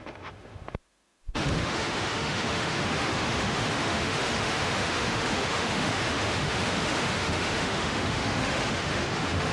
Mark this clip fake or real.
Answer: fake